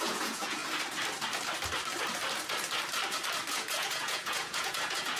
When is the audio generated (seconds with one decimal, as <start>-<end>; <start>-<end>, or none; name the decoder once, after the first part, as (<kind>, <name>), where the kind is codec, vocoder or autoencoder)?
0.0-0.6 (vocoder, Vocos); 3.5-5.2